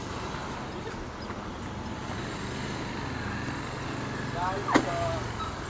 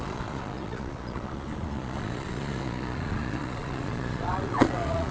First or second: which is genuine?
first